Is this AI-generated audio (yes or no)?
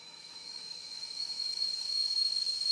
yes